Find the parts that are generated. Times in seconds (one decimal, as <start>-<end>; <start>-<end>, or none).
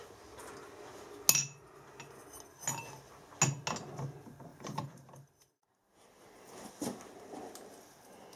4.5-6.7